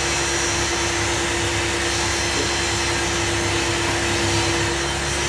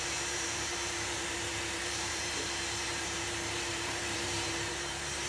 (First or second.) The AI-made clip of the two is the second